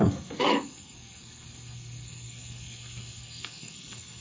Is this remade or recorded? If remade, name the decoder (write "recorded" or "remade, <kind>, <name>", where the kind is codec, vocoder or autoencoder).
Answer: remade, codec, SNAC